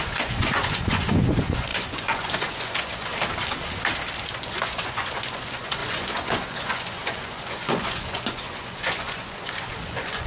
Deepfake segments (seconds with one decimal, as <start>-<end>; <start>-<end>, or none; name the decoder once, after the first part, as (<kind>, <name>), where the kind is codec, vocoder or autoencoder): 0.0-3.1 (vocoder, Vocos); 4.3-10.3

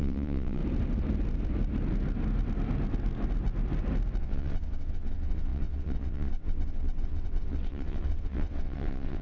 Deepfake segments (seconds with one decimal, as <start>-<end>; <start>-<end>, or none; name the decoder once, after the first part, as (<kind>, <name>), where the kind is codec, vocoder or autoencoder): 0.0-0.6 (vocoder, WaveNeXt); 4.2-9.2

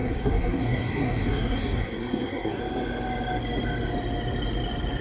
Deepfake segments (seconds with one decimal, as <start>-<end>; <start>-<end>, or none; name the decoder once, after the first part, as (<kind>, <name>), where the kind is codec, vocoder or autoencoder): 0.0-2.6 (codec, SNAC)

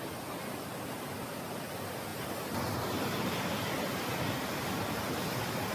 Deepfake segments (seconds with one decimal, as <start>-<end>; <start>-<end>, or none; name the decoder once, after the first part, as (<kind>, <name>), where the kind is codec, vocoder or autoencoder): none

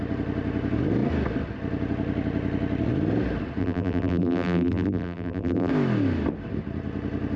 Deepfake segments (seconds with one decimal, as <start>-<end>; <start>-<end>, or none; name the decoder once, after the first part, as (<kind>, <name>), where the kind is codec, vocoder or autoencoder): 3.6-5.7 (vocoder, BigVGAN v2)

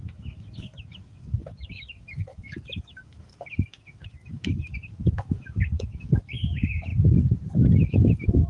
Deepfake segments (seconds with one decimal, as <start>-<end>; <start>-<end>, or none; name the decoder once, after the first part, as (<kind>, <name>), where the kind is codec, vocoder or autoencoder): 0.0-6.9 (autoencoder, DAC-VAE); 7.5-8.5